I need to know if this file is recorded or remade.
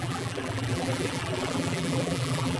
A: remade